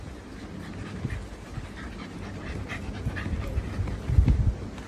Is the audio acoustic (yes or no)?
yes